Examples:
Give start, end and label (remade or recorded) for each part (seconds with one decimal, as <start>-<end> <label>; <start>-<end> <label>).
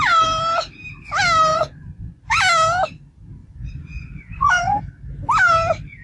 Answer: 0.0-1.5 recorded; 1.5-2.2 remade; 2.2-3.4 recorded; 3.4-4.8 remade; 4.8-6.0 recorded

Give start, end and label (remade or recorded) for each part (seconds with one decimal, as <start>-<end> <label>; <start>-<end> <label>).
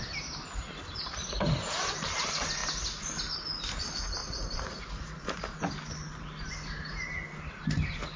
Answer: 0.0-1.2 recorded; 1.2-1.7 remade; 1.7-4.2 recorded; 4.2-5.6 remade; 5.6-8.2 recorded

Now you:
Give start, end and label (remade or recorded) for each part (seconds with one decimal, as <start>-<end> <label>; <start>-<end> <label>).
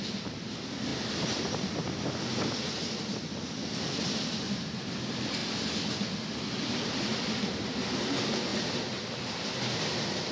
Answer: 0.0-10.3 recorded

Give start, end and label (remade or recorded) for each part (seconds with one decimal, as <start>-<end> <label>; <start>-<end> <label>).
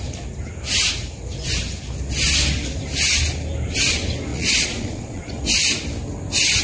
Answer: 0.0-4.3 recorded; 4.3-5.4 remade; 5.4-6.6 recorded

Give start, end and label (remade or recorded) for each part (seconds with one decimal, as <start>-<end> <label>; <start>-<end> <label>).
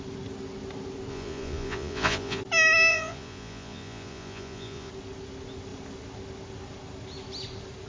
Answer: 0.0-1.1 recorded; 1.1-2.4 remade; 2.4-2.9 recorded; 2.9-4.9 remade; 4.9-7.9 recorded